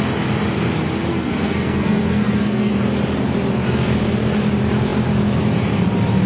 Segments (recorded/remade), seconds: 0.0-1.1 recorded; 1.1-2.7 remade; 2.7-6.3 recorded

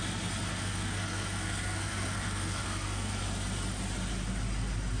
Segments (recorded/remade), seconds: 0.0-0.5 recorded; 0.5-3.2 remade; 3.2-5.0 recorded

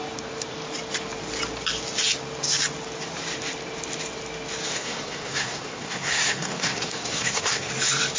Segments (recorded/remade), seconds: 0.0-4.7 recorded; 4.7-7.7 remade; 7.7-8.2 recorded

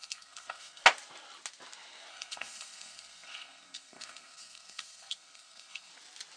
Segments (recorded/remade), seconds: 0.0-0.8 remade; 0.8-2.1 recorded; 2.1-5.9 remade; 5.9-6.4 recorded

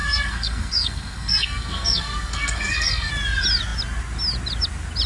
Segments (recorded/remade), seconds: 0.0-3.1 remade; 3.1-5.1 recorded

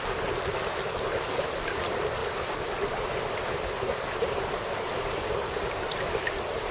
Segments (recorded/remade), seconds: 0.0-6.7 recorded

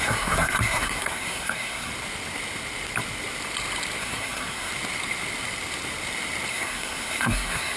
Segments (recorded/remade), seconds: 0.0-1.9 remade; 1.9-4.0 recorded; 4.0-4.7 remade; 4.7-6.5 recorded; 6.5-7.8 remade

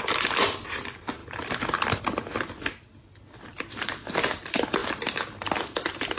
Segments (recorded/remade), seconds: 0.0-6.2 recorded